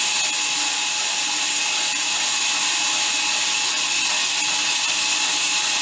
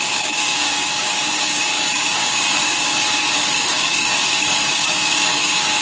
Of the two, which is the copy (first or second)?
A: second